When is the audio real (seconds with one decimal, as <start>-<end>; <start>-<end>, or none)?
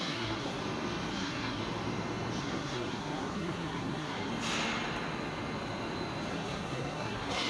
0.6-1.1; 1.6-2.4; 4.3-6.3